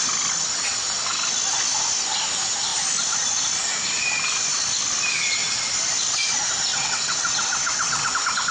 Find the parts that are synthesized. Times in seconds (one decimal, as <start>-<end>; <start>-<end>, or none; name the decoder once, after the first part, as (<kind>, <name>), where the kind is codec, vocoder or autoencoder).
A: 6.7-8.1 (vocoder, WaveNeXt)